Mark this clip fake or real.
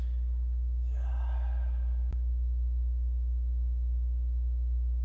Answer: real